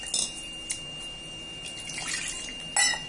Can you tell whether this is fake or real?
real